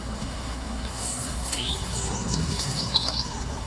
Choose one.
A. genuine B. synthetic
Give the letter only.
B